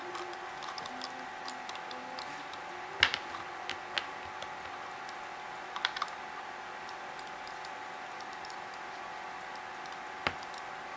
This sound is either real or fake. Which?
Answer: real